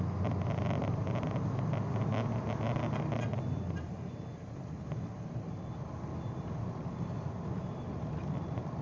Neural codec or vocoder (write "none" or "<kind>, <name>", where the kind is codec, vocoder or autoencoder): none